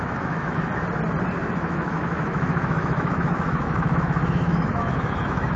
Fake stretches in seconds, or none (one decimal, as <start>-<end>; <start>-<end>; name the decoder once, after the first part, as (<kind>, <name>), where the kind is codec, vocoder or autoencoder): 0.0-0.7 (autoencoder, DAC-VAE); 1.5-5.6